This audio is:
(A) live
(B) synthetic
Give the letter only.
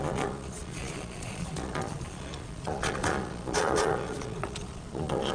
B